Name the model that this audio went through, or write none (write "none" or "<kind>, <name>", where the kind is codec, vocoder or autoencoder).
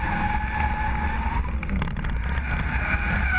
none